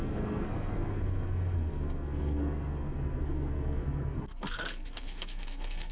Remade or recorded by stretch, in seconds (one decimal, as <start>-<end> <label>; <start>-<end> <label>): 0.0-5.9 remade